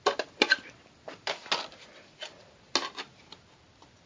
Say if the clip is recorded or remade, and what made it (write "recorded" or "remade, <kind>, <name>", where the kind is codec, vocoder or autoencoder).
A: recorded